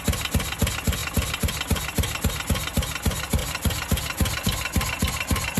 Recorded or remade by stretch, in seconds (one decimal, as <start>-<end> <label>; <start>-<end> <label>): 0.0-1.0 recorded; 1.0-2.3 remade; 2.3-3.4 recorded; 3.4-5.6 remade